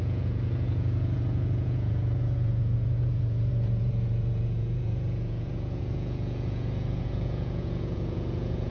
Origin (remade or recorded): remade